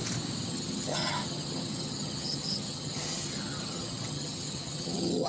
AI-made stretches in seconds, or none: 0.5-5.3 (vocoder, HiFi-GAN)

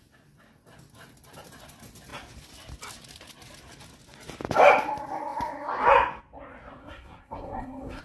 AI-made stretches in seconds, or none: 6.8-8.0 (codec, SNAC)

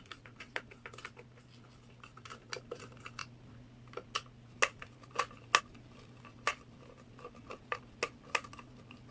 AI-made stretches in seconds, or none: none

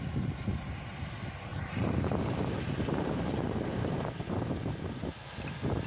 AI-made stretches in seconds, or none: 1.5-5.0 (vocoder, BigVGAN v2)

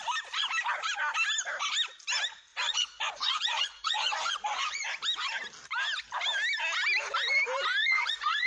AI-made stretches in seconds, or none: 2.5-4.9 (vocoder, Vocos); 7.8-8.5

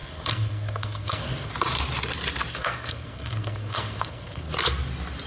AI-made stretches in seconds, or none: 0.0-1.5 (codec, SNAC); 2.5-4.5